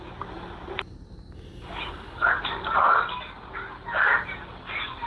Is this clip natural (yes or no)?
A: yes